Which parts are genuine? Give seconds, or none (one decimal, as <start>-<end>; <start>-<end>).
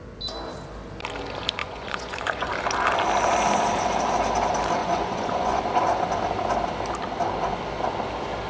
0.0-1.6; 2.5-4.8; 5.6-8.5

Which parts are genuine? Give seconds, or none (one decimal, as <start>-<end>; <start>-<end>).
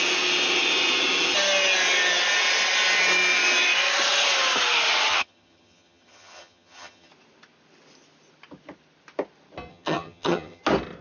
0.0-5.1; 7.1-9.7; 10.6-11.0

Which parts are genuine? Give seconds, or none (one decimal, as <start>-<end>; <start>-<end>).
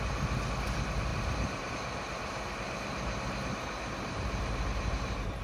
0.0-1.1; 1.7-2.2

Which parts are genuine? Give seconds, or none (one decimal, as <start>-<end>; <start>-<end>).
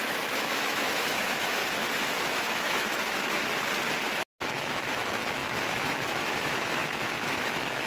1.6-2.1; 3.4-4.5